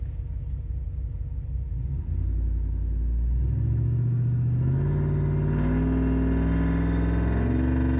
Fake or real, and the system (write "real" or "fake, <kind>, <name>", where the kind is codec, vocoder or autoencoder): real